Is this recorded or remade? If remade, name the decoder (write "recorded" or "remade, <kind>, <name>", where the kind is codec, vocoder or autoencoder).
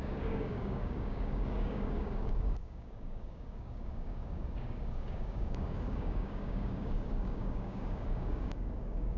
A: remade, codec, DAC